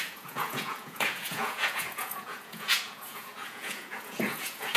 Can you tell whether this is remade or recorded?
remade